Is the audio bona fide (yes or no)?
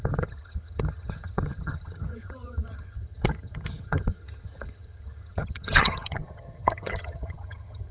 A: no